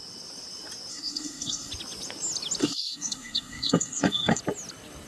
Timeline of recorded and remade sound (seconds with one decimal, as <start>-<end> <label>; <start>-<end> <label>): 0.0-0.9 recorded; 0.9-1.7 remade; 1.7-2.6 recorded; 2.6-4.4 remade; 4.4-5.1 recorded

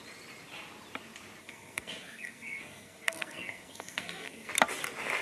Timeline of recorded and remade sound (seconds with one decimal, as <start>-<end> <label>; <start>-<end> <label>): 0.0-1.4 recorded; 1.4-4.5 remade; 4.5-5.2 recorded

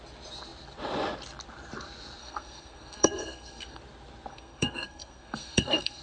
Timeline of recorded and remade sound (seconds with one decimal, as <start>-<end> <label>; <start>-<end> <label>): 0.0-2.2 recorded; 2.2-3.8 remade; 3.8-4.3 recorded; 4.3-6.0 remade

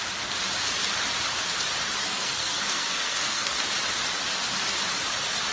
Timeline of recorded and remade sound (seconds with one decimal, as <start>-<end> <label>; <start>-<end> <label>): 0.0-2.0 recorded; 2.0-3.6 remade; 3.6-5.5 recorded

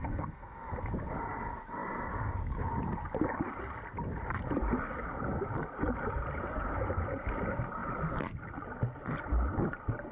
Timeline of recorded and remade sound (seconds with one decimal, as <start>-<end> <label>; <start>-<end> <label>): 0.0-0.8 remade; 0.8-10.1 recorded

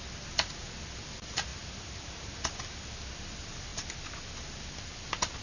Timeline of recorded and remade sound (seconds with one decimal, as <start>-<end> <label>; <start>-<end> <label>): 0.0-5.4 recorded

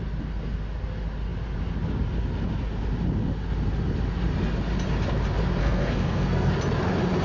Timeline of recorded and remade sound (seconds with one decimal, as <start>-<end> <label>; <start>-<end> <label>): 0.0-5.6 recorded; 5.6-6.5 remade; 6.5-7.2 recorded

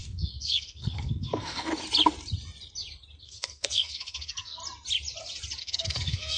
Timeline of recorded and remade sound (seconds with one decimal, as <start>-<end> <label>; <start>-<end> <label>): 0.0-1.7 remade; 1.7-3.2 recorded; 3.2-4.6 remade; 4.6-5.6 recorded; 5.6-6.4 remade